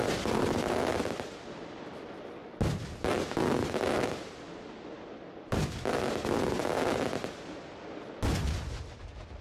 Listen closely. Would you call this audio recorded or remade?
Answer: recorded